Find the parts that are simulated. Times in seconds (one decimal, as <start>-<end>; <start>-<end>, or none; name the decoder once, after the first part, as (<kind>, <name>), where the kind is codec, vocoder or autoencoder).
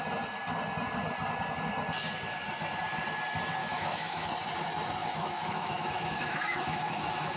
3.6-4.3 (autoencoder, DAC-VAE); 5.0-7.4